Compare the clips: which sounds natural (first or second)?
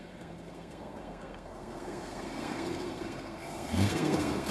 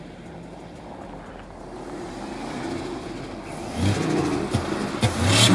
second